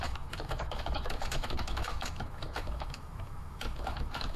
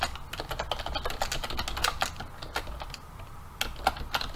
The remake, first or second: first